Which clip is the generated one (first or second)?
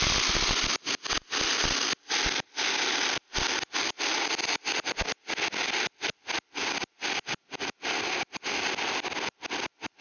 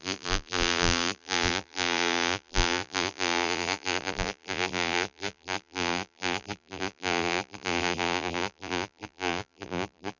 second